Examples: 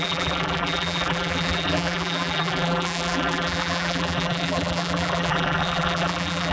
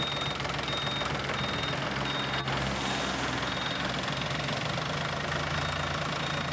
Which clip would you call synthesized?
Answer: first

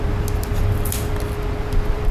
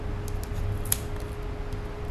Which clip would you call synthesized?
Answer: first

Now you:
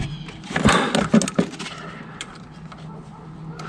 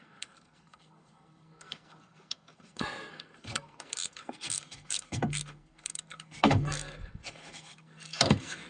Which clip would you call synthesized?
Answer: second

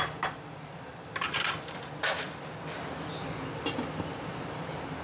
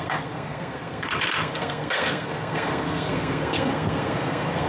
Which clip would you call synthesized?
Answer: second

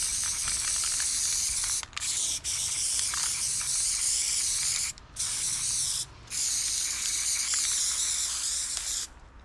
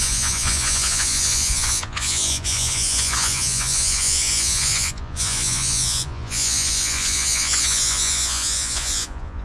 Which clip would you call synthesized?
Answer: second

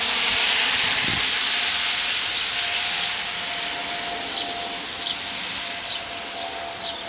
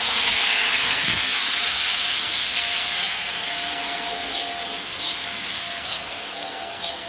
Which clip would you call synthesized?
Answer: second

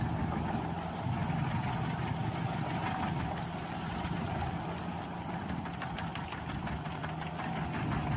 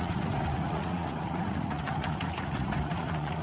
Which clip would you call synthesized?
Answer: second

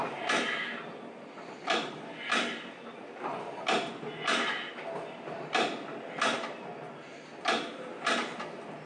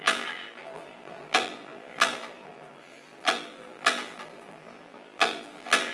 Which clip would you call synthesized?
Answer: second